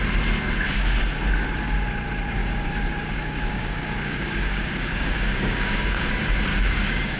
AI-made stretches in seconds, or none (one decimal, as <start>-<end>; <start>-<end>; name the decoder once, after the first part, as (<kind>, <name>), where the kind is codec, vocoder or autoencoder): 2.4-6.1 (codec, DAC); 6.5-7.2